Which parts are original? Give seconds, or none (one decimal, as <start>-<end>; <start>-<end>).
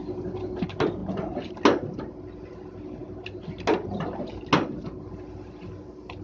0.0-1.0; 1.5-6.2